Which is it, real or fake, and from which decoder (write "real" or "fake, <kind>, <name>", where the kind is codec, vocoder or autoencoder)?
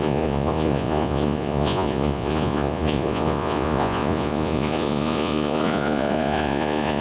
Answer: fake, vocoder, Vocos